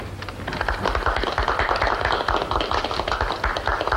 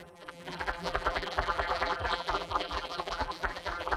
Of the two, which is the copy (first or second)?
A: second